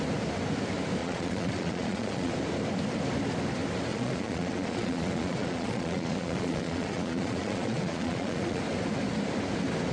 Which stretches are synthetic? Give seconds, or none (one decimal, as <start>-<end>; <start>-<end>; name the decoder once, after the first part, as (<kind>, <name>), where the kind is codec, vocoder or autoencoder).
1.0-2.3 (vocoder, Vocos); 3.9-8.6